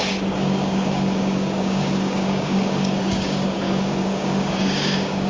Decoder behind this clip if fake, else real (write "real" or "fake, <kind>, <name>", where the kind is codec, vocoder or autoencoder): fake, codec, DAC